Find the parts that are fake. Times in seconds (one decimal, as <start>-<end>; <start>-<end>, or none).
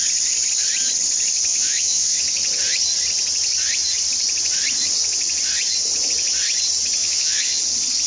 1.5-2.2; 7.0-7.6